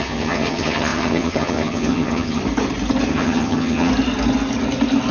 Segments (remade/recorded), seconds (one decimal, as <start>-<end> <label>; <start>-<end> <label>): 0.0-2.4 remade; 2.4-3.1 recorded; 3.1-3.9 remade; 3.9-5.1 recorded